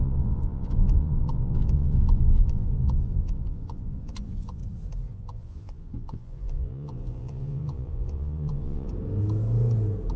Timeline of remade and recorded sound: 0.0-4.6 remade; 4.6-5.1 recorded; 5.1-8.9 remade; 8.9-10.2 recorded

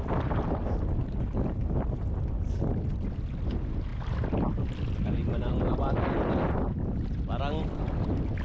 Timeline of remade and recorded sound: 0.0-8.4 recorded

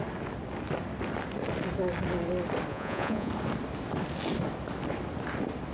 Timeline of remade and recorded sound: 0.0-2.7 recorded; 2.7-3.3 remade; 3.3-5.7 recorded

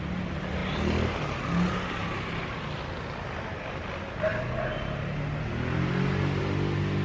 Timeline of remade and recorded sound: 0.0-7.0 recorded